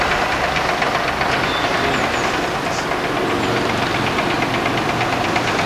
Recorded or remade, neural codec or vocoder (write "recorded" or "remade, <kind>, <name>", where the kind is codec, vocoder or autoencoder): recorded